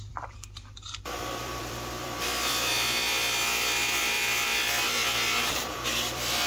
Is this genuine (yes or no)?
no